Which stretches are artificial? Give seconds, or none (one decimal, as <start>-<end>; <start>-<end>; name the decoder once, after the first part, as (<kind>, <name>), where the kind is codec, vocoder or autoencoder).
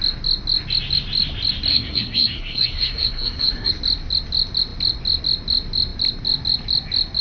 1.7-3.7 (codec, SNAC)